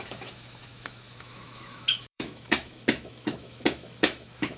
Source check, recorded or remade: remade